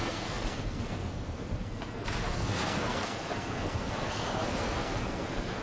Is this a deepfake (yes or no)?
yes